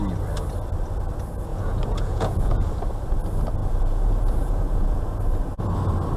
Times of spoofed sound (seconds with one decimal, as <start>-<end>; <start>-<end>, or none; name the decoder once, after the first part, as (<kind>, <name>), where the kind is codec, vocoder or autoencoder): 1.5-2.7 (vocoder, Vocos); 3.6-5.0